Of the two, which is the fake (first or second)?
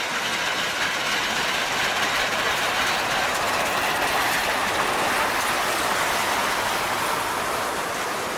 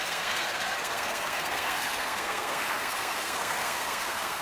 second